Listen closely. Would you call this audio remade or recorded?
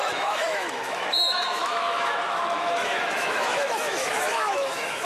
remade